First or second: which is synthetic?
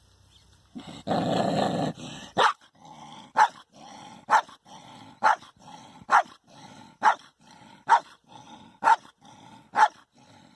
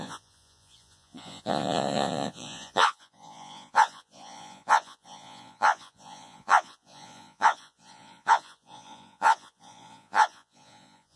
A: second